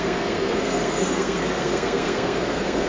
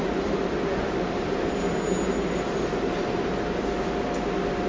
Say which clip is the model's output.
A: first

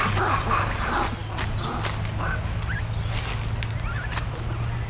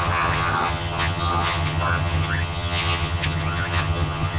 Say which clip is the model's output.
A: second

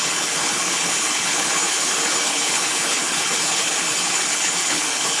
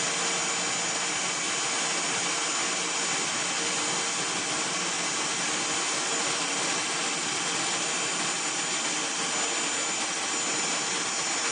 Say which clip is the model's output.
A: first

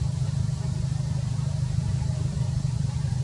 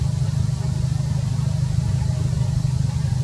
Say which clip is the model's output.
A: first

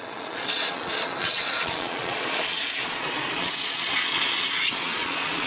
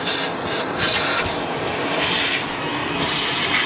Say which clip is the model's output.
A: first